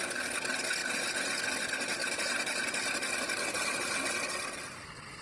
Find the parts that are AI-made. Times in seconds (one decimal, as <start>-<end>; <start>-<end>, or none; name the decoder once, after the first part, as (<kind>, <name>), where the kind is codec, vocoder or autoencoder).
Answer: 2.0-4.1 (vocoder, BigVGAN v2)

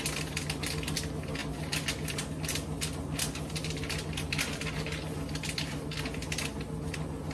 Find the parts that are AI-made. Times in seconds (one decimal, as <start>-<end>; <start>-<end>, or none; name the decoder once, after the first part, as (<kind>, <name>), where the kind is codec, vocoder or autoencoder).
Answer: none

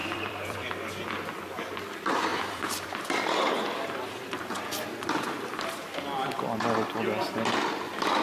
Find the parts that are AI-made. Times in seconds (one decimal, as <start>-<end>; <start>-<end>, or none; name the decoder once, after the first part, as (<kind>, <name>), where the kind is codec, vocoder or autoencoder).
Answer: 0.0-0.9 (vocoder, BigVGAN v2); 2.3-6.6

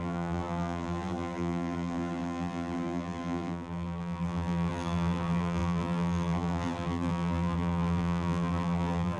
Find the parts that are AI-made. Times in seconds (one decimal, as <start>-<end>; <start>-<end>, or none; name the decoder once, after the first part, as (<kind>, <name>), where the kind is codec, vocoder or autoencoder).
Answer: 0.0-9.2 (vocoder, BigVGAN v2)

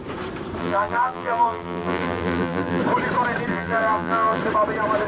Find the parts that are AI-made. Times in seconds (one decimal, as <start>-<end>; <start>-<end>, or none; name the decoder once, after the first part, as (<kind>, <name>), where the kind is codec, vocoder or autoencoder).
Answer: 0.6-2.8 (vocoder, BigVGAN v2); 3.5-4.4

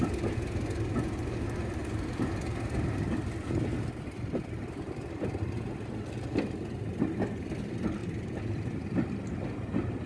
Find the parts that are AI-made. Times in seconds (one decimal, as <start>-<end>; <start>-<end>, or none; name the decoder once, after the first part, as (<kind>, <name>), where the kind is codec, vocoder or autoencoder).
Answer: 1.8-5.5 (vocoder, BigVGAN v2); 8.0-9.1

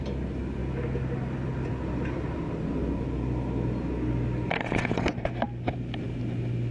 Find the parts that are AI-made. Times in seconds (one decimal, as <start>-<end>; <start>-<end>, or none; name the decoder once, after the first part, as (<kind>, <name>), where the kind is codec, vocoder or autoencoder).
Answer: 0.6-2.7 (vocoder, BigVGAN v2)

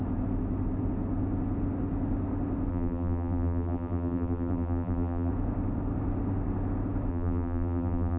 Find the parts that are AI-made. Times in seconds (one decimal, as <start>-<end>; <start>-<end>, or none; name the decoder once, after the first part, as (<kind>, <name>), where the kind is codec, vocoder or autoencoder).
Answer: 2.7-5.3 (vocoder, BigVGAN v2); 7.1-8.2